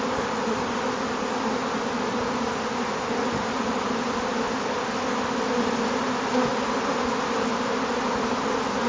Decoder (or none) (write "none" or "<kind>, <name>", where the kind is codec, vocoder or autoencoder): none